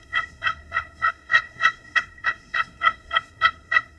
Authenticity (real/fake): fake